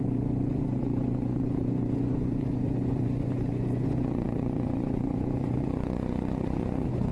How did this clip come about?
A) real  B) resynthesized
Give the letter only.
B